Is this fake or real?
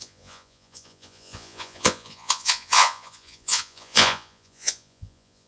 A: fake